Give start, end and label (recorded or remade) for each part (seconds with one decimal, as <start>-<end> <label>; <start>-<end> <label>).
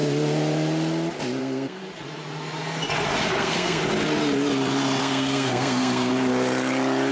0.0-1.4 recorded; 1.4-1.8 remade; 1.8-3.3 recorded; 3.3-3.8 remade; 3.8-5.0 recorded; 5.0-6.1 remade; 6.1-7.1 recorded